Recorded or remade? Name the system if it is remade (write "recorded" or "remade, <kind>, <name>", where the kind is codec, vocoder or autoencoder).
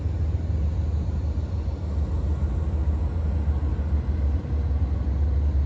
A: recorded